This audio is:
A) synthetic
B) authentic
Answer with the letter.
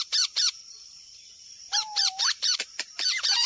A